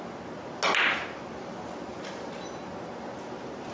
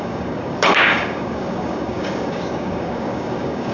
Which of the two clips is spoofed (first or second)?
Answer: second